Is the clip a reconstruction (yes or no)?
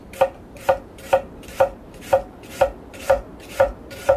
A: no